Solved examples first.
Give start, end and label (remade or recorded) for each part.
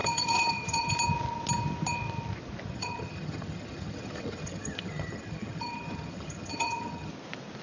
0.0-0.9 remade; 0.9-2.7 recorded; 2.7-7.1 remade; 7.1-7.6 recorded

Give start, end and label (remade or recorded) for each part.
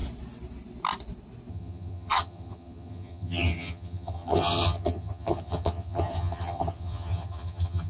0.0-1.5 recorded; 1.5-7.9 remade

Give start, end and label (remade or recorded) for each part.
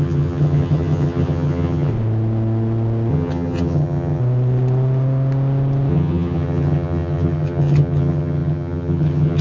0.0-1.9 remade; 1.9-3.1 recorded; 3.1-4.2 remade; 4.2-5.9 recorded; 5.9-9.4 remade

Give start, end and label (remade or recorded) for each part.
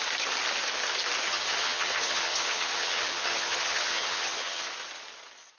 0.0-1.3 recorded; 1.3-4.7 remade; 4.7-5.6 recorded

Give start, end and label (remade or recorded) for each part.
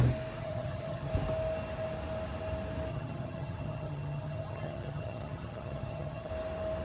0.0-0.4 recorded; 0.4-1.1 remade; 1.1-2.9 recorded; 2.9-6.3 remade; 6.3-6.8 recorded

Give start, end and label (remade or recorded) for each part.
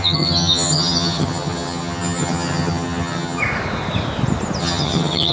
0.0-3.4 remade; 3.4-4.6 recorded; 4.6-5.3 remade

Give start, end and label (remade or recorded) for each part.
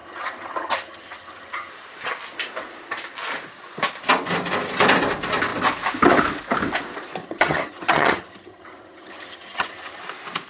0.0-1.7 remade; 1.7-7.2 recorded; 7.2-10.0 remade; 10.0-10.5 recorded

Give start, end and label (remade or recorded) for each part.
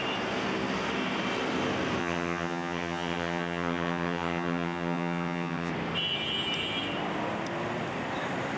0.0-2.0 recorded; 2.0-5.7 remade; 5.7-8.6 recorded